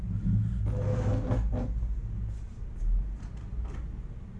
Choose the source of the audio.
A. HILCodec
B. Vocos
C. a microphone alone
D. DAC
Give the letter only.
C